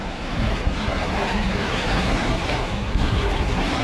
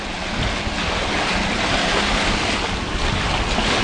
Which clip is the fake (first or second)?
first